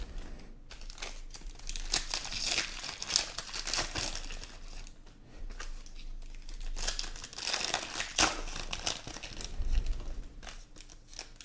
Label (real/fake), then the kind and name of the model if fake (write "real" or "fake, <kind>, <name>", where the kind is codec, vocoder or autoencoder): real